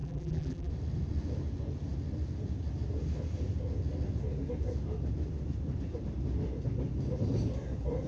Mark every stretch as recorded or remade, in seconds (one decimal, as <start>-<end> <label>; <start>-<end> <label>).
0.0-0.7 remade; 0.7-8.1 recorded